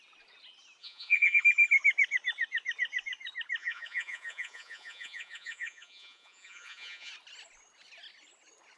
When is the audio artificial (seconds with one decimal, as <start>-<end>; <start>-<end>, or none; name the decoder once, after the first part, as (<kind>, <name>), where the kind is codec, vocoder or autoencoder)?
0.8-1.4 (vocoder, Vocos); 3.6-7.1

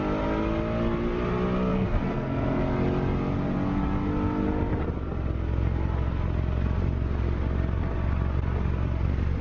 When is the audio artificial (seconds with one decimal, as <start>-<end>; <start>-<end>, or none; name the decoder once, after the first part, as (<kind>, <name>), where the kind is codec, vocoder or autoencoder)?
1.7-2.6 (codec, SNAC)